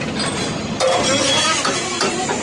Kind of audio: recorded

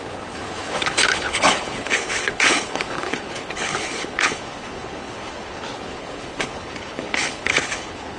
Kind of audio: remade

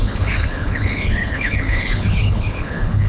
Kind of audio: remade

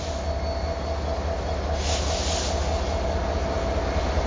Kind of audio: recorded